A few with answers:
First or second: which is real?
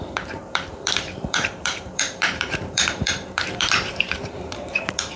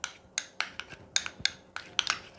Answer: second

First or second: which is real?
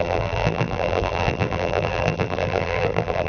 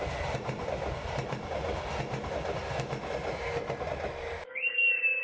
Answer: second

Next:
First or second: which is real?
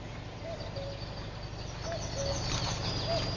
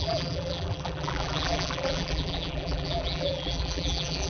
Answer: first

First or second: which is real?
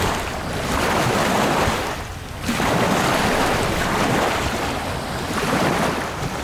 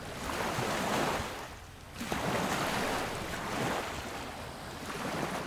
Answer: second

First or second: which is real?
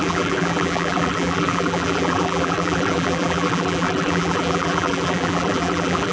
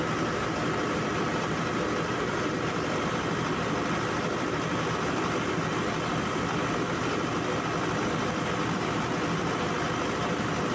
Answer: second